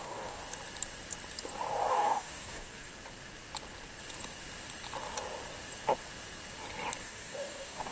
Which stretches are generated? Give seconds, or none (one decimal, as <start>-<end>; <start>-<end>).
0.0-0.4; 1.9-2.9; 7.0-7.9